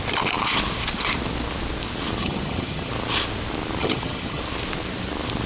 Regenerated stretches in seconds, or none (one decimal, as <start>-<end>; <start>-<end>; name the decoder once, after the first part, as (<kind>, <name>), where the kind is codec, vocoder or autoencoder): 2.2-2.9 (vocoder, HiFi-GAN); 3.8-4.4